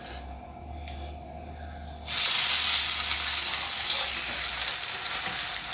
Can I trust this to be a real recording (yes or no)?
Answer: yes